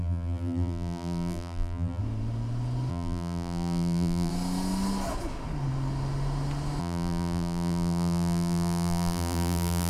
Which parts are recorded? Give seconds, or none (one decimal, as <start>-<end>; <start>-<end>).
2.0-2.9; 4.3-6.8